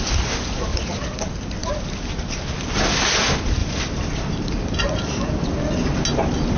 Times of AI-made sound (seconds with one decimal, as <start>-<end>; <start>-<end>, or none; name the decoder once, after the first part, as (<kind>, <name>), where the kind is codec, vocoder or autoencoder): 0.7-1.2 (vocoder, BigVGAN v2); 1.6-2.5; 3.6-5.4